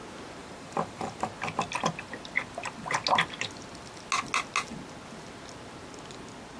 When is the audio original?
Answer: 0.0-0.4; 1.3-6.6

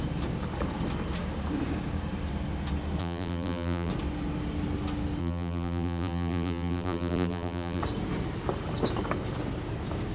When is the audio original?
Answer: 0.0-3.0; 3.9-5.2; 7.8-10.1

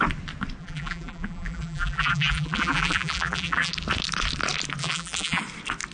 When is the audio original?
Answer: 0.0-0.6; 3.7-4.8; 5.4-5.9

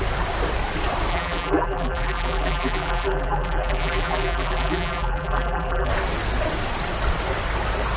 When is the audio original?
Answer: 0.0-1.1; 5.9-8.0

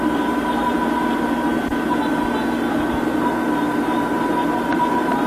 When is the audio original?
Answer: 1.5-4.7

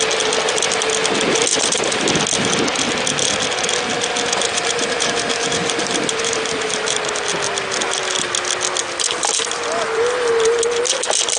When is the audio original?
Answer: 0.0-1.5; 2.2-4.5; 7.3-11.4